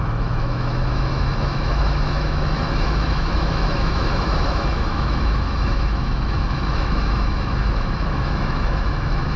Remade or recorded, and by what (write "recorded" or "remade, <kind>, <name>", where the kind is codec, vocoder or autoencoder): remade, autoencoder, DAC-VAE